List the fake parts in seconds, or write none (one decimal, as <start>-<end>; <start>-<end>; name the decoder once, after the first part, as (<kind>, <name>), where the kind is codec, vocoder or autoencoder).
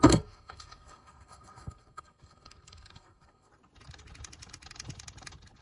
0.0-3.5 (codec, SNAC)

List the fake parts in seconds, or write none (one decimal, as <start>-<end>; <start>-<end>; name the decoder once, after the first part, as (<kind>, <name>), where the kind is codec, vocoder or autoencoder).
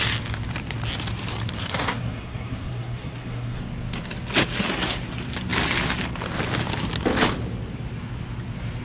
1.6-3.6 (codec, SNAC)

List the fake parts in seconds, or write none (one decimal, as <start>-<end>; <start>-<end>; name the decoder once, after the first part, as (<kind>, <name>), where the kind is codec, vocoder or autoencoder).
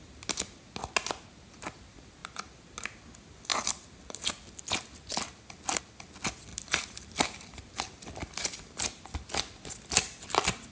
3.5-4.6 (vocoder, BigVGAN v2); 6.5-7.5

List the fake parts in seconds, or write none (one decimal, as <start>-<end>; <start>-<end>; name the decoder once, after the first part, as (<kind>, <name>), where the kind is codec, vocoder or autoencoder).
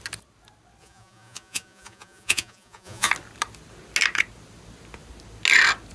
0.8-3.1 (vocoder, Vocos)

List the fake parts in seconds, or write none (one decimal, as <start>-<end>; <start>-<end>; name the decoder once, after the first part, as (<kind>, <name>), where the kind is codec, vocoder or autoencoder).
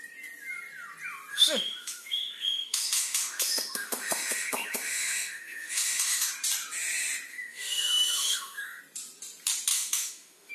1.3-6.3 (autoencoder, DAC-VAE); 7.3-8.8; 9.7-10.5